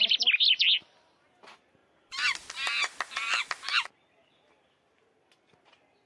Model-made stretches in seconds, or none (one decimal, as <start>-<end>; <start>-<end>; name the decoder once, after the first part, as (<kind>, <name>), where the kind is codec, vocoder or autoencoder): none